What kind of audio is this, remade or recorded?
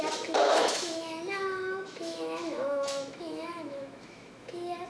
remade